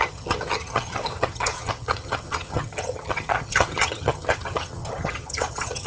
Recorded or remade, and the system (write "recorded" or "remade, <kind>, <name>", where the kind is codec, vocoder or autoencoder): remade, vocoder, HiFi-GAN